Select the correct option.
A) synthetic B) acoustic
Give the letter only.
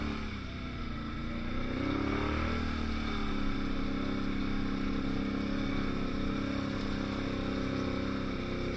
B